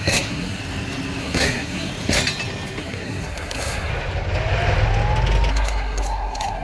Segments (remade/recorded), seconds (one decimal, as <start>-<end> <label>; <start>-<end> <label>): 0.0-0.6 remade; 0.6-1.2 recorded; 1.2-1.9 remade; 1.9-2.8 recorded; 2.8-3.9 remade; 3.9-5.5 recorded; 5.5-6.6 remade